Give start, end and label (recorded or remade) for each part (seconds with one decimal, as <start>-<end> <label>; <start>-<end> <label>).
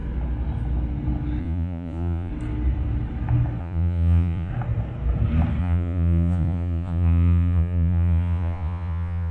0.0-1.4 recorded; 1.4-2.3 remade; 2.3-3.6 recorded; 3.6-4.5 remade; 4.5-5.6 recorded; 5.6-9.3 remade